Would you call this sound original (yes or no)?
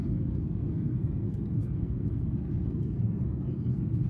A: no